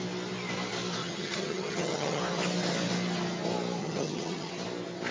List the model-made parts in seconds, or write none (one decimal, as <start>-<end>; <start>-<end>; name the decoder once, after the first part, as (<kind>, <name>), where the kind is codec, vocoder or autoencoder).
1.0-2.2 (vocoder, HiFi-GAN); 3.8-4.5